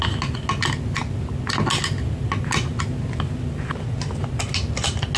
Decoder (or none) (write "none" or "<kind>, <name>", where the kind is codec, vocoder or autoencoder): none